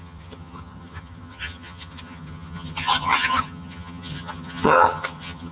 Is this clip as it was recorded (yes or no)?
no